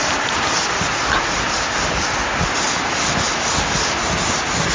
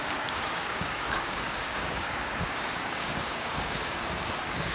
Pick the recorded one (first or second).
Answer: first